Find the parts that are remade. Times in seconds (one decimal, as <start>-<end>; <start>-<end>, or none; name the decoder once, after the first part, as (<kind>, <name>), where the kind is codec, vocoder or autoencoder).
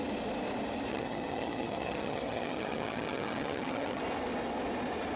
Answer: 0.9-4.0 (vocoder, HiFi-GAN)